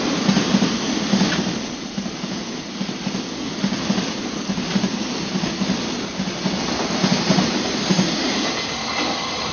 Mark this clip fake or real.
real